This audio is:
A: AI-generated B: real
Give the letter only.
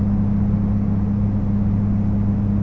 B